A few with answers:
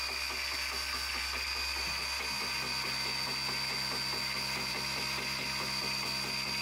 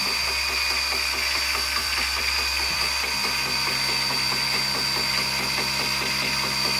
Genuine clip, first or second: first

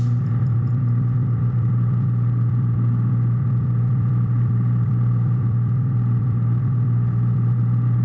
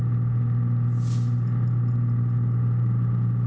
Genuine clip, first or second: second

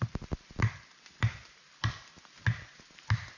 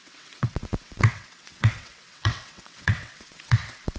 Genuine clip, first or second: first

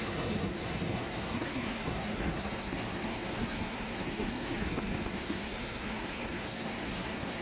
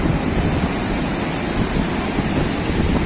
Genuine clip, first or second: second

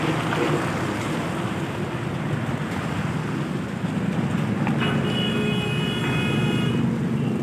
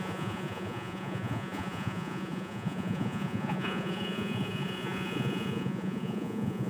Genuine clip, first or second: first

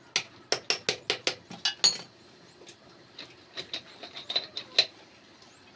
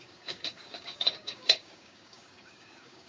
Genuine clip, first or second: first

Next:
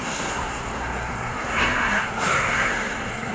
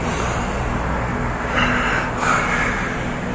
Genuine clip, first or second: second